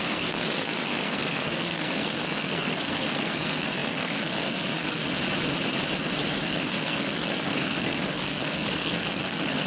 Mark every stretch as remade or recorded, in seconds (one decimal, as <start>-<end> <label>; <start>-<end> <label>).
0.0-5.0 remade; 5.0-6.3 recorded; 6.3-9.7 remade